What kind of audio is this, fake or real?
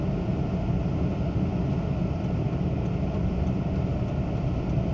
real